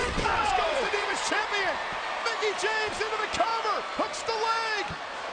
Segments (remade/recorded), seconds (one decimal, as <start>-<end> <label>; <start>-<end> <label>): 0.0-1.4 remade; 1.4-5.3 recorded